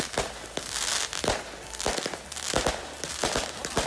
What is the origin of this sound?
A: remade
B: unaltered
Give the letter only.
B